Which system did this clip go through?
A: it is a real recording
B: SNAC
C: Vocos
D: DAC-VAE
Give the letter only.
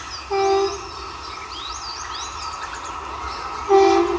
A